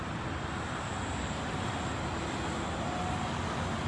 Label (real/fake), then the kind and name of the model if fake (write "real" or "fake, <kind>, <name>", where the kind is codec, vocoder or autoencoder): real